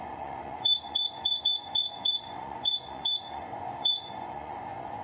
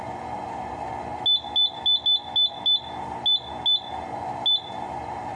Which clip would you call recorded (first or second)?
second